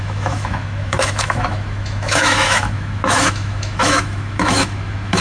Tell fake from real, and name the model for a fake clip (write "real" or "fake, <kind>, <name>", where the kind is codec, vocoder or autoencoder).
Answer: fake, autoencoder, DAC-VAE